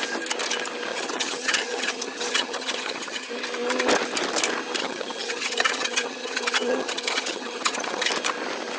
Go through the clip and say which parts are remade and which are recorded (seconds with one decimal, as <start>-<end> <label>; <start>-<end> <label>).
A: 0.0-0.9 recorded; 0.9-3.3 remade; 3.3-4.8 recorded; 4.8-8.1 remade; 8.1-8.8 recorded